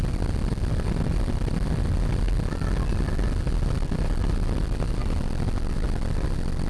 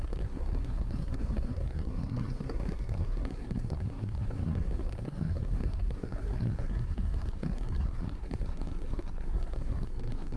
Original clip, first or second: first